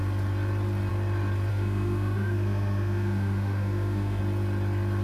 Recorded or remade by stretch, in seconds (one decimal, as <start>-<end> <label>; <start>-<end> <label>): 0.0-1.5 recorded; 1.5-4.2 remade; 4.2-5.0 recorded